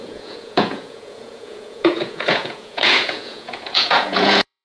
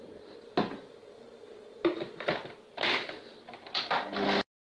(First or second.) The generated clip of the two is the first